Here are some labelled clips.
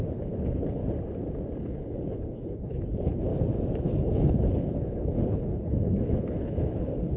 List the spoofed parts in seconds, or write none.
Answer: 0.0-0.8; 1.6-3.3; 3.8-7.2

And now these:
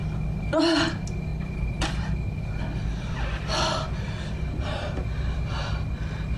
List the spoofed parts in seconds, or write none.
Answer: 1.3-4.2

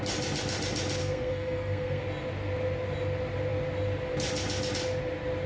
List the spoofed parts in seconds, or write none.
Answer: 1.0-2.0

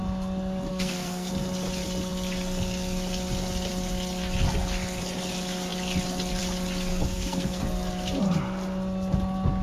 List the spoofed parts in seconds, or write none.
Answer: 0.7-1.3; 6.9-7.6

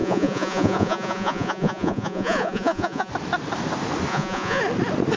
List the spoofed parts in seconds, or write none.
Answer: 0.0-3.1; 4.1-4.6

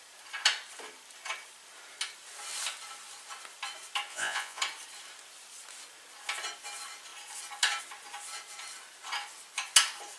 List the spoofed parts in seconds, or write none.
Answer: 4.1-4.6

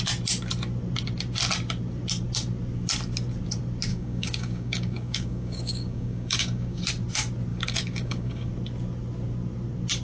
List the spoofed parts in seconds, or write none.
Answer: 3.9-6.8; 7.5-8.5